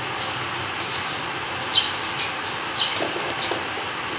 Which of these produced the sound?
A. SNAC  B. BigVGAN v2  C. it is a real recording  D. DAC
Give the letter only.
C